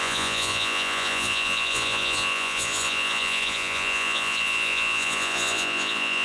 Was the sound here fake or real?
fake